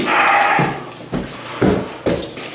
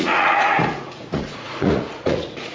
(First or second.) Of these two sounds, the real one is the first